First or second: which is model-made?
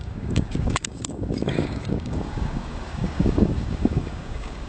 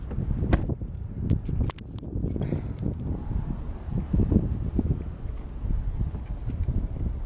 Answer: first